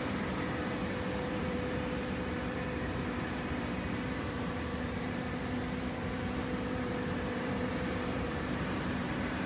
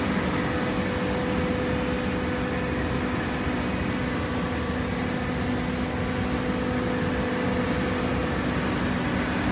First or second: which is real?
second